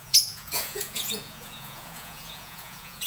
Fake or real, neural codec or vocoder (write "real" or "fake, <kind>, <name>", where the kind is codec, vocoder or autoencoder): fake, vocoder, Vocos